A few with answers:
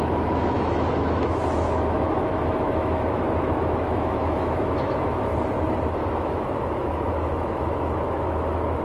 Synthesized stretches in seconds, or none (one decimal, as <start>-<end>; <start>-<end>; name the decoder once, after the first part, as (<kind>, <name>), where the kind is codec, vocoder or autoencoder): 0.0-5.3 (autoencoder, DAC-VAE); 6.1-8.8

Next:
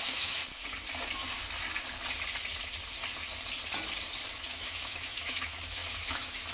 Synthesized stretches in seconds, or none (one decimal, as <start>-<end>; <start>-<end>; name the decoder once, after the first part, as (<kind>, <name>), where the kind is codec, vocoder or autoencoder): 0.0-0.4 (autoencoder, DAC-VAE); 4.3-6.5

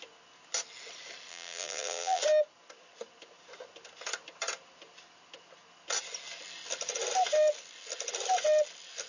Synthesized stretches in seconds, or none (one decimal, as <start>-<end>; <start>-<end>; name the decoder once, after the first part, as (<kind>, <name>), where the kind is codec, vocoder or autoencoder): 1.3-2.2 (vocoder, BigVGAN v2)

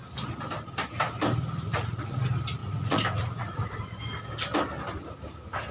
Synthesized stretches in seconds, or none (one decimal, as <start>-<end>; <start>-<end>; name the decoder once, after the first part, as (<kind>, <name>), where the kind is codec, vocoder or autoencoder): 1.7-2.2 (vocoder, Vocos); 2.6-4.0

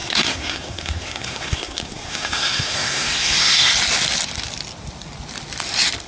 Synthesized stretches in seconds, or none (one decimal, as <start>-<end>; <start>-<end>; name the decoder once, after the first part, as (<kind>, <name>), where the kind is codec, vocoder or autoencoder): 0.0-3.7 (codec, SNAC)

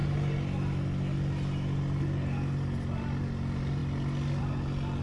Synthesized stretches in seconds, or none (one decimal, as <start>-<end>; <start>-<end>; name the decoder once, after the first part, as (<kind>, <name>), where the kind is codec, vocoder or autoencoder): none

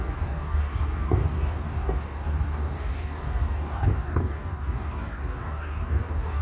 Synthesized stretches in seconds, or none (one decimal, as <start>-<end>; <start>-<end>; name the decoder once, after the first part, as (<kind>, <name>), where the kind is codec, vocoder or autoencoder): 0.0-6.4 (codec, DAC)